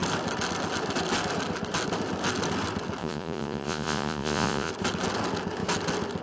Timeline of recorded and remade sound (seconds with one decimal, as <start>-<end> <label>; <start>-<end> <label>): 0.0-3.0 recorded; 3.0-4.7 remade; 4.7-6.2 recorded